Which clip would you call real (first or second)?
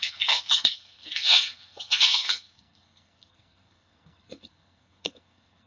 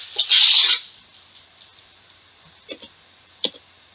second